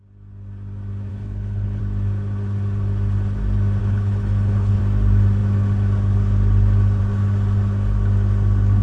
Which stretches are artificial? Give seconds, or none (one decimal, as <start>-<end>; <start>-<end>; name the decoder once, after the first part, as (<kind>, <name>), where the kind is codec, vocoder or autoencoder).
1.1-1.8 (codec, HILCodec); 3.8-4.8